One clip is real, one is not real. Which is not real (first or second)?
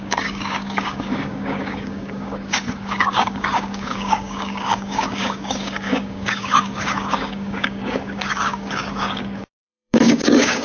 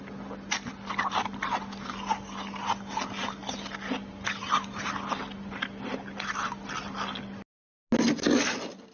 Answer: first